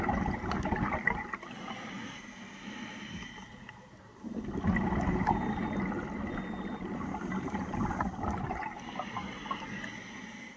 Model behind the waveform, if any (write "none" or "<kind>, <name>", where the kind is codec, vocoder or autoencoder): none